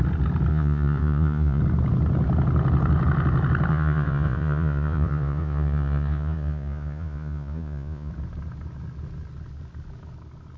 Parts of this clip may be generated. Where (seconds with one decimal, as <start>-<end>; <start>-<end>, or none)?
0.5-1.6; 3.7-8.1